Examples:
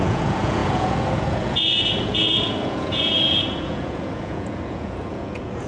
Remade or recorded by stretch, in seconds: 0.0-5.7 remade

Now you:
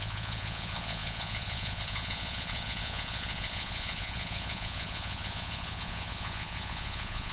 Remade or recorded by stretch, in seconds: 0.0-7.3 remade

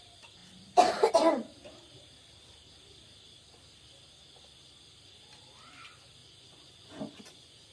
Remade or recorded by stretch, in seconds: 0.0-6.2 recorded; 6.2-7.7 remade

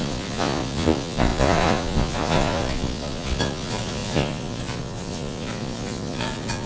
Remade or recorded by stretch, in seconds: 0.0-6.7 remade

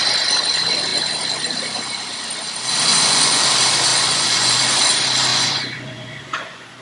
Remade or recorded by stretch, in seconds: 0.0-2.9 recorded; 2.9-3.4 remade; 3.4-3.9 recorded; 3.9-4.6 remade; 4.6-5.3 recorded; 5.3-6.8 remade

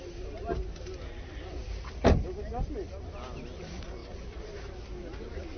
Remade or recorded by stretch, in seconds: 0.0-5.6 recorded

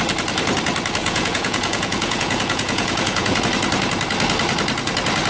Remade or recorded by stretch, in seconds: 0.0-1.0 recorded; 1.0-3.4 remade; 3.4-5.3 recorded